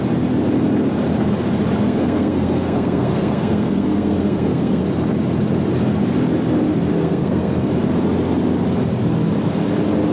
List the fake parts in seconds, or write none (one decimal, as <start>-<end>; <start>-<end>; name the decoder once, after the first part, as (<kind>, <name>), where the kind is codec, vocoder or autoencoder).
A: 1.8-4.8 (codec, SNAC); 6.9-7.7